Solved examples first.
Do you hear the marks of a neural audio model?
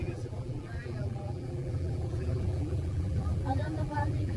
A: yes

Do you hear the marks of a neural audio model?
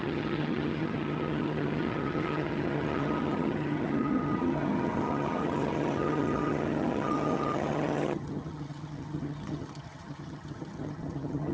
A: yes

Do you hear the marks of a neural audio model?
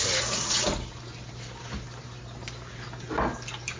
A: no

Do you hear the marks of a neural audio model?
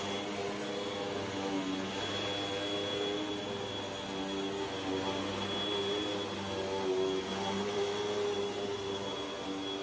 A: no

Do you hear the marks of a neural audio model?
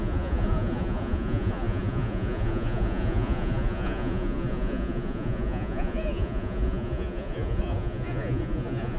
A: yes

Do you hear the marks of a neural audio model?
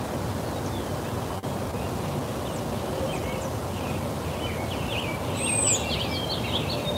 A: no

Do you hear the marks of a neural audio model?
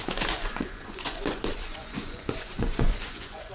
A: yes